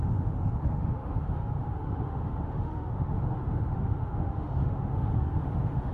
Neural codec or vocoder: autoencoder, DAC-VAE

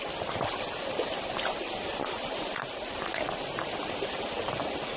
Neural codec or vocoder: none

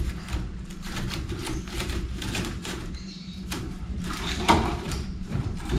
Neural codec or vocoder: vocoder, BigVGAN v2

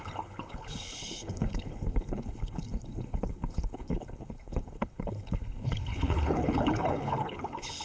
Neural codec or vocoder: codec, HILCodec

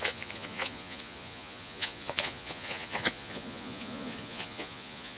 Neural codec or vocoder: vocoder, Vocos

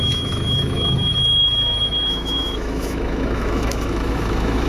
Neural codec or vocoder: autoencoder, DAC-VAE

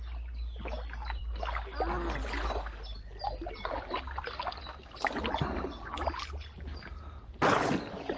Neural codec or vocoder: none